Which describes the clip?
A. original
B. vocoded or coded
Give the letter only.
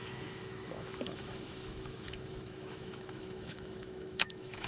B